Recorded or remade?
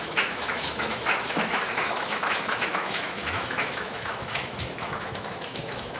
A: remade